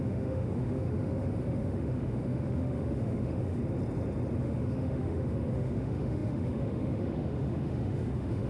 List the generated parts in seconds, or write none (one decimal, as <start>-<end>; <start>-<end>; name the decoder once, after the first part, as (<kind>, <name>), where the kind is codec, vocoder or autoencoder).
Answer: 0.0-3.6 (autoencoder, DAC-VAE); 4.4-8.5